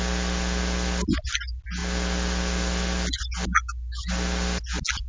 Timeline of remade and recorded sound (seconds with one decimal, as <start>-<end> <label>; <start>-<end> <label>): 0.0-5.1 recorded